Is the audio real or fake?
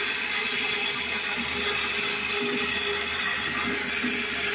real